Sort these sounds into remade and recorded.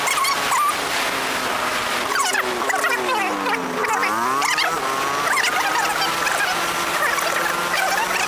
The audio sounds recorded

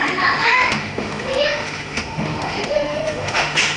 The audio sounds remade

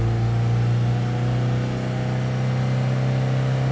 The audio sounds recorded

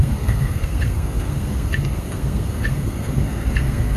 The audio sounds remade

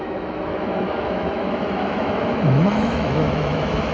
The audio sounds remade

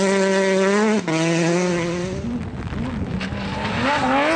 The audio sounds recorded